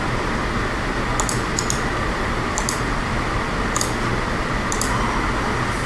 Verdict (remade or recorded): recorded